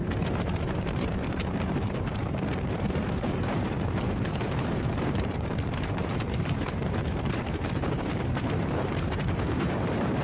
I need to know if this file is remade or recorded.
remade